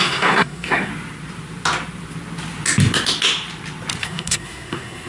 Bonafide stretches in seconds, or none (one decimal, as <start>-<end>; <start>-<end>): 0.9-4.0